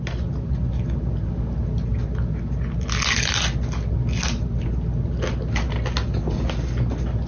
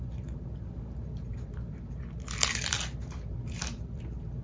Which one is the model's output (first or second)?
second